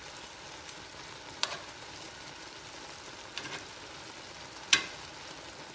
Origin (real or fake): real